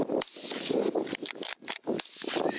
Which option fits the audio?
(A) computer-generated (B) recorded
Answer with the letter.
B